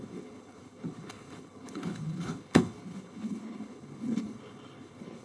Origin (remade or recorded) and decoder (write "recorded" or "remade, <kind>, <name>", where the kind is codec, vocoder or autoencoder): remade, codec, HILCodec